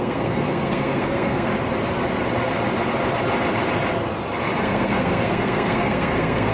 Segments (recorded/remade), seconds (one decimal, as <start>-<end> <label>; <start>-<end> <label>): 0.0-1.5 remade; 1.5-4.6 recorded; 4.6-6.5 remade